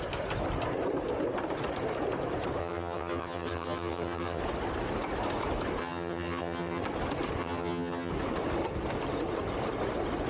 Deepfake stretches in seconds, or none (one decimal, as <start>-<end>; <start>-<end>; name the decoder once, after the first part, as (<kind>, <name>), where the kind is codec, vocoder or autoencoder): 2.6-4.4 (vocoder, HiFi-GAN); 5.8-6.8; 7.4-8.1